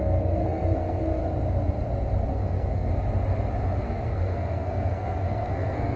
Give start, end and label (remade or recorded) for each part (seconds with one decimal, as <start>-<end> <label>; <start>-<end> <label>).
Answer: 0.0-1.2 remade; 1.2-2.3 recorded; 2.3-2.9 remade; 2.9-3.8 recorded; 3.8-6.0 remade